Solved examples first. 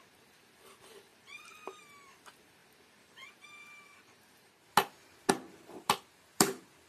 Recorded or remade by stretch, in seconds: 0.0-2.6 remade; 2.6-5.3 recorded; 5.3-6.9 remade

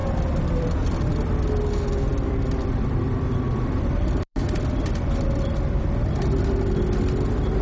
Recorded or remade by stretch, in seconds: 0.0-1.7 remade; 1.7-2.1 recorded; 2.1-6.4 remade; 6.4-7.6 recorded

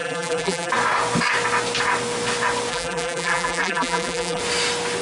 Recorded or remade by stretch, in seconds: 0.0-0.7 remade; 0.7-2.7 recorded; 2.7-4.4 remade; 4.4-5.0 recorded

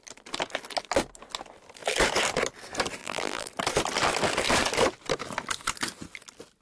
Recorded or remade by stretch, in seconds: 0.0-3.0 recorded; 3.0-3.5 remade; 3.5-6.6 recorded

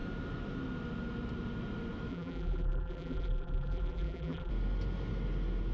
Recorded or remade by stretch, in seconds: 0.0-2.1 recorded; 2.1-4.5 remade; 4.5-5.7 recorded

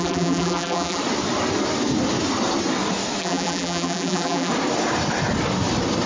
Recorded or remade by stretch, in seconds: 0.0-1.0 remade; 1.0-3.2 recorded; 3.2-4.5 remade; 4.5-6.1 recorded